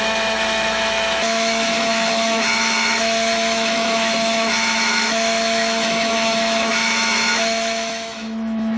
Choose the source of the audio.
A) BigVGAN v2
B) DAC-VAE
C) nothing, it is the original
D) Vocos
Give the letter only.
B